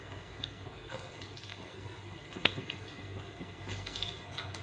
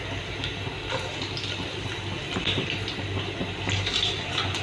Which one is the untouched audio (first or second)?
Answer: second